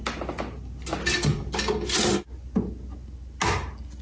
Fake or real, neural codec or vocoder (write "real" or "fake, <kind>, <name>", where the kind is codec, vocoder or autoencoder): real